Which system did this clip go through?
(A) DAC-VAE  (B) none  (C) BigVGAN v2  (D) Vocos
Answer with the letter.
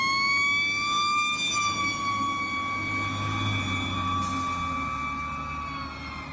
B